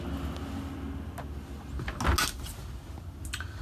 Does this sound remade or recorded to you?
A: recorded